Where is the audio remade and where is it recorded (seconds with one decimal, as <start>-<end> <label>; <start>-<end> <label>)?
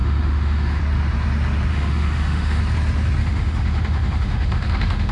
0.0-0.8 remade; 0.8-1.7 recorded; 1.7-2.6 remade; 2.6-3.2 recorded; 3.2-5.1 remade